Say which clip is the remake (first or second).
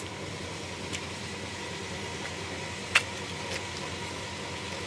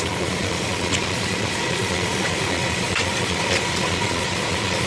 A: second